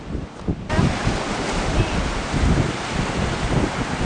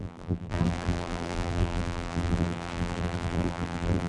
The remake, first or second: second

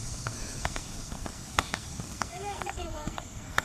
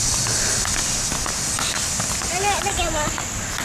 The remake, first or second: first